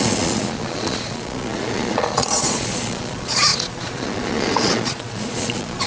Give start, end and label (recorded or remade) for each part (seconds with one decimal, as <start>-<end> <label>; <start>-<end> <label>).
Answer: 0.0-5.9 remade